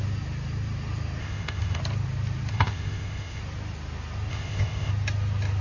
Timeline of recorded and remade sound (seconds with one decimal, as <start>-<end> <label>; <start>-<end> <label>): 0.0-1.2 recorded; 1.2-1.8 remade; 1.8-2.5 recorded; 2.5-3.4 remade; 3.4-4.3 recorded; 4.3-4.9 remade; 4.9-5.6 recorded